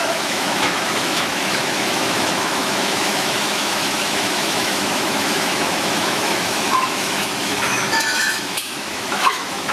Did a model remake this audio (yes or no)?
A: yes